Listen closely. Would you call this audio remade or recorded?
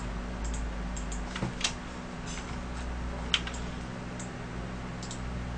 recorded